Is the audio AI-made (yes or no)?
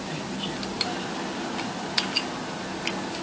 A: no